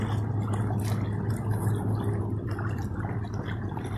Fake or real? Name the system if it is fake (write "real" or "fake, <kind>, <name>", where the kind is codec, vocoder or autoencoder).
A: real